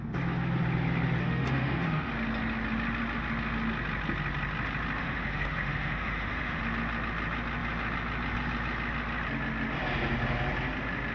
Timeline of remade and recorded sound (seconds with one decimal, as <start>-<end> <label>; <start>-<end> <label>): 0.0-1.2 recorded; 1.2-2.1 remade; 2.1-5.0 recorded; 5.0-6.6 remade; 6.6-11.1 recorded